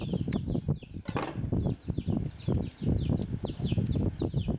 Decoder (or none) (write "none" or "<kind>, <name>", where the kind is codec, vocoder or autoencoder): none